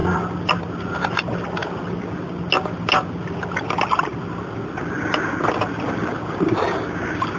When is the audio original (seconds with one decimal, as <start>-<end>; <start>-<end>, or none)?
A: 0.0-7.4